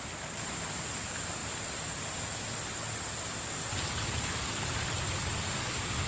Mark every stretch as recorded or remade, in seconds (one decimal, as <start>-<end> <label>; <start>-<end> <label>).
0.0-6.1 recorded